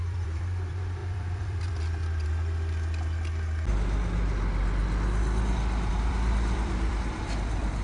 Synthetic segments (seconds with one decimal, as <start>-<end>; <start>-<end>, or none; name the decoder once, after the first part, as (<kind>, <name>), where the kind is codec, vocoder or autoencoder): 0.0-2.0 (vocoder, BigVGAN v2); 5.9-7.8